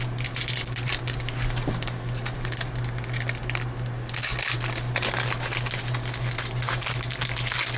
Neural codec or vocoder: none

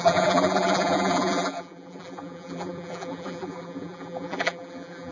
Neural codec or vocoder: vocoder, BigVGAN v2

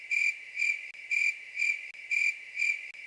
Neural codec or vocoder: none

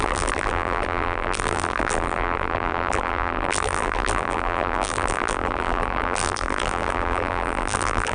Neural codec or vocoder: vocoder, BigVGAN v2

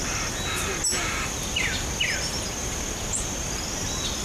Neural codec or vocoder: none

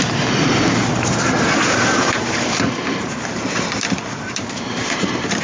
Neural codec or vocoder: vocoder, BigVGAN v2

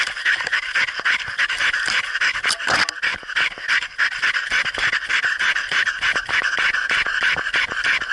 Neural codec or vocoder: none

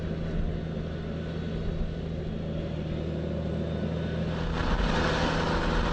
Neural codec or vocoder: none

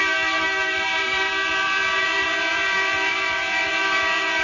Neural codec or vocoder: vocoder, BigVGAN v2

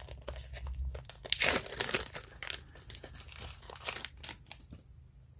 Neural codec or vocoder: none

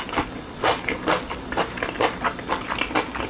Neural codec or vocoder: none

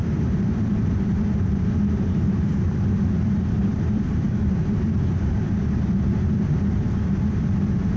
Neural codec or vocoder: vocoder, BigVGAN v2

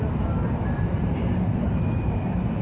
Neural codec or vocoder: vocoder, BigVGAN v2